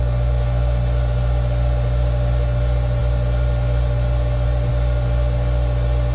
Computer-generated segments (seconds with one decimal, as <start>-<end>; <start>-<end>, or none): none